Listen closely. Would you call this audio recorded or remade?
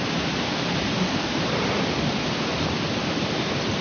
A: remade